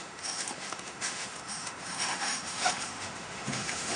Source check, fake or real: fake